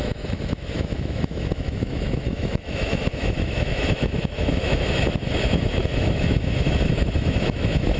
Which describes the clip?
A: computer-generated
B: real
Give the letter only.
A